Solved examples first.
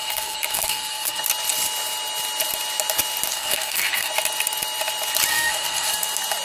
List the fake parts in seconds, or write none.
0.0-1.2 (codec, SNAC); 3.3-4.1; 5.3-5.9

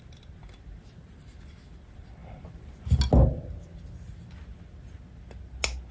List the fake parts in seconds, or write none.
none

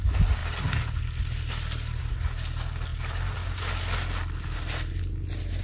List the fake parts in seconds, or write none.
none